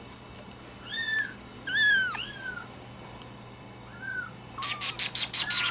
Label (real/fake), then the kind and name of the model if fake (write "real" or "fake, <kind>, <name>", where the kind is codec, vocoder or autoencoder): real